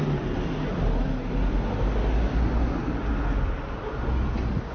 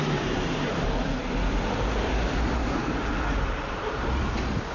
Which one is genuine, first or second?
first